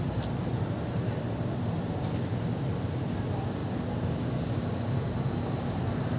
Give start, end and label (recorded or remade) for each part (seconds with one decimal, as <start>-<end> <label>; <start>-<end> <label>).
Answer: 0.0-6.2 recorded